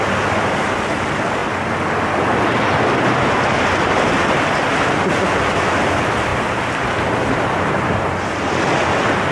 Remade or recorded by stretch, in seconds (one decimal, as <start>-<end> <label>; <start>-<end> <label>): 0.0-9.3 recorded